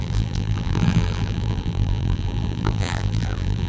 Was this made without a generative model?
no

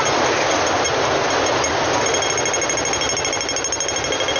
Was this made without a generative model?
yes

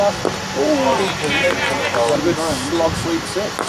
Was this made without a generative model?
yes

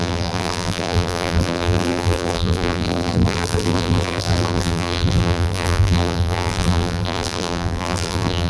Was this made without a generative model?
no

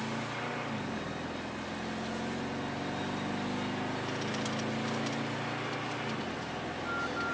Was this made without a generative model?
yes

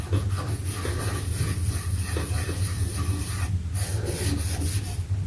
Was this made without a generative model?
yes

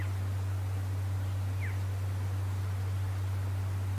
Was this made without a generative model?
yes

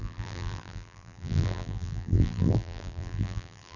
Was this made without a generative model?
no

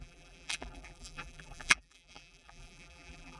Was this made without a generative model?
no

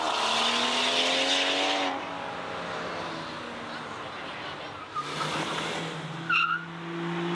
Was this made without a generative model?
yes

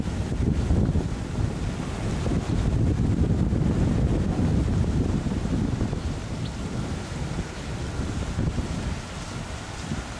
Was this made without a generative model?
yes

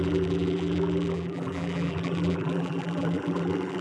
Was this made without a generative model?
no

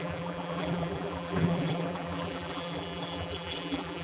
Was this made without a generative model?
no